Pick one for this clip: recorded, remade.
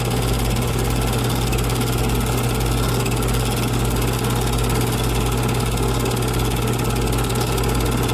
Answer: recorded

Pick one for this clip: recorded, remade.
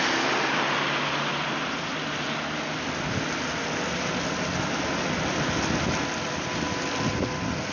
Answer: recorded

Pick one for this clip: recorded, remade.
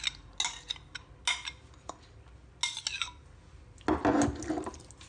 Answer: recorded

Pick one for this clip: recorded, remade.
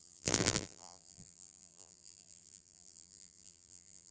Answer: remade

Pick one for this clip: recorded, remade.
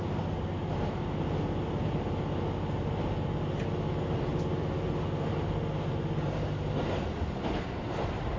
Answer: recorded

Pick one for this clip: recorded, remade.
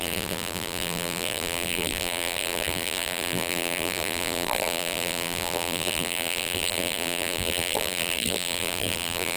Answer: remade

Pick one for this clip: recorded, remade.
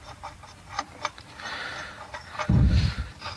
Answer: remade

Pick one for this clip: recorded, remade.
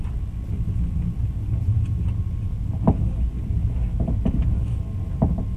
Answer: recorded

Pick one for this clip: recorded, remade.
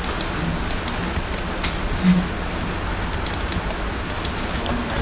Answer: recorded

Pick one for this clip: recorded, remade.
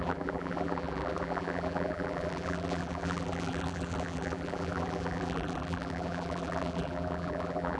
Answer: remade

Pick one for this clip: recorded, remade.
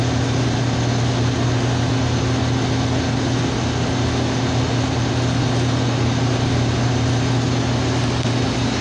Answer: recorded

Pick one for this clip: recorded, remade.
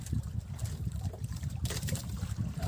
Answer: remade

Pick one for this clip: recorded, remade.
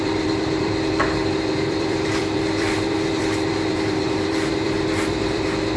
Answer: remade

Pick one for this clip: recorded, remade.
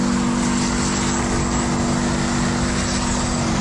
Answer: recorded